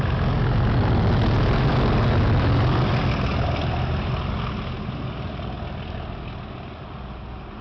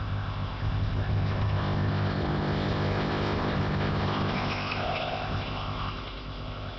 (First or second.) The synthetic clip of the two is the second